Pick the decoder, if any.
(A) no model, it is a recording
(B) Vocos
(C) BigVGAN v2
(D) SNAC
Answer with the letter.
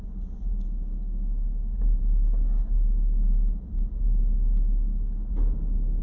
A